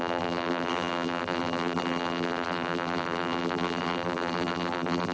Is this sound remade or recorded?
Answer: remade